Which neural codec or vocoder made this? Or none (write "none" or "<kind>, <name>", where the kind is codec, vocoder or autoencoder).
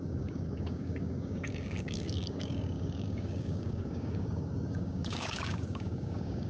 codec, DAC